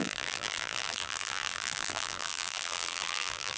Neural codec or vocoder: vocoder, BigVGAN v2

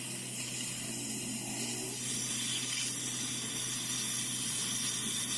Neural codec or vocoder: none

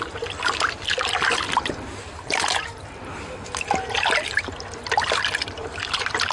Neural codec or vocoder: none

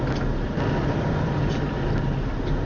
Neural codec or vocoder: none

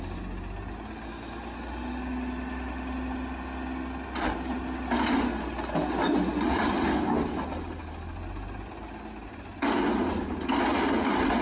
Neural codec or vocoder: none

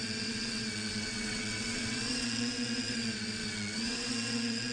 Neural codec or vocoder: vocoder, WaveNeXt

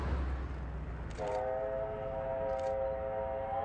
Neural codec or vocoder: none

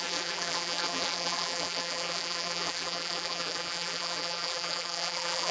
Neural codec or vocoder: vocoder, BigVGAN v2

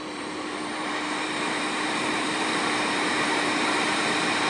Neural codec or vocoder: vocoder, BigVGAN v2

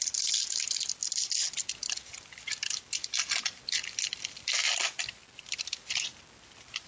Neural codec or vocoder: none